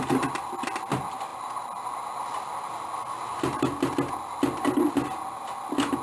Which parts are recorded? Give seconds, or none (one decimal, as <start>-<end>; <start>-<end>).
0.0-6.0